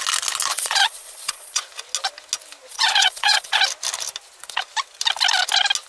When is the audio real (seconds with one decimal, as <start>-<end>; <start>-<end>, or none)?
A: 0.0-0.5; 1.6-2.7; 3.6-5.9